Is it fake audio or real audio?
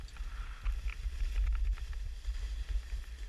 real